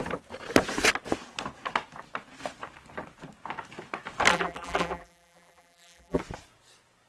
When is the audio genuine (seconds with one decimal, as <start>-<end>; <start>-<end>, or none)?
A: 0.0-4.3; 6.2-7.1